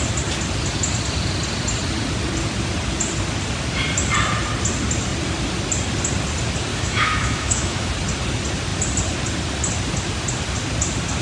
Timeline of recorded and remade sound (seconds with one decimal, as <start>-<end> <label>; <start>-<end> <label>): 0.0-6.7 recorded; 6.7-7.9 remade; 7.9-11.2 recorded

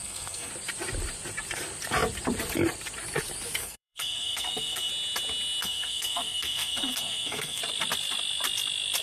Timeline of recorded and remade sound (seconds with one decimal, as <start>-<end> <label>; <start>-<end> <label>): 0.0-0.5 remade; 0.5-3.6 recorded; 3.6-4.9 remade; 4.9-5.6 recorded; 5.6-7.6 remade; 7.6-9.0 recorded

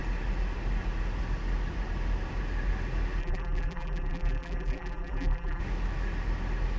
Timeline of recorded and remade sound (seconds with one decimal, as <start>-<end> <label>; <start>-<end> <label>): 0.0-3.2 recorded; 3.2-5.6 remade; 5.6-6.8 recorded

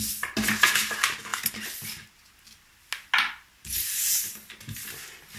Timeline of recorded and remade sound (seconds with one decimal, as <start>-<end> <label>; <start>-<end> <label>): 0.0-5.4 recorded

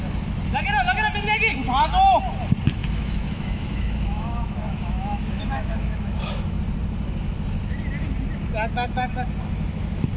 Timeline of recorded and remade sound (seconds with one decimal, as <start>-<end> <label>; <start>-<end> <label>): 0.0-2.8 recorded; 2.8-6.6 remade; 6.6-10.2 recorded

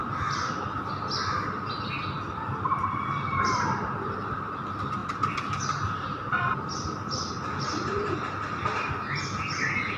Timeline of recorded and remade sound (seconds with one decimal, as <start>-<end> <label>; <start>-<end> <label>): 0.0-10.0 recorded

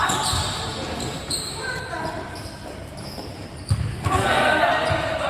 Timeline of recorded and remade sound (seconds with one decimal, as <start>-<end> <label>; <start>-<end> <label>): 0.0-3.9 recorded; 3.9-4.6 remade; 4.6-5.3 recorded